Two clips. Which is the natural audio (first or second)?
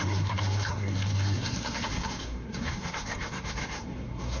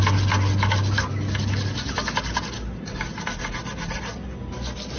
second